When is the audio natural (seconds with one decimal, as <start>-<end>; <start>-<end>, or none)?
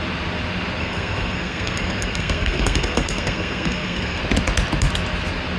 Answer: 0.0-0.8; 4.2-5.6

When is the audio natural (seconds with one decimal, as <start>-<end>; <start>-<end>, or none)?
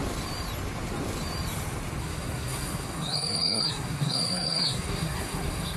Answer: 0.0-2.0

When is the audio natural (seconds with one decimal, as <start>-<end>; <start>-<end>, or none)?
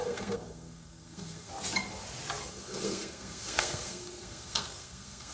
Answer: 1.5-2.5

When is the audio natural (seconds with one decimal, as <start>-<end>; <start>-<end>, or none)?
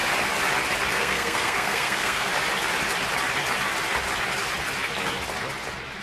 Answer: 0.0-0.9; 2.3-6.0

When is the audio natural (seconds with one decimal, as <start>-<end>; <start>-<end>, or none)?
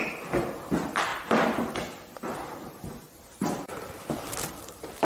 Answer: 0.0-5.0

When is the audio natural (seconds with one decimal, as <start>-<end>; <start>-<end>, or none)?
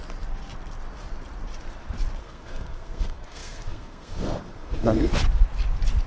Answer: 0.0-2.2; 5.1-6.1